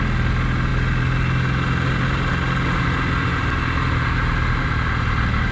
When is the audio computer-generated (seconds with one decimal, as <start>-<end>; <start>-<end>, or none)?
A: none